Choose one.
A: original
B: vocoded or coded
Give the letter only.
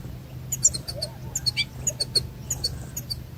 A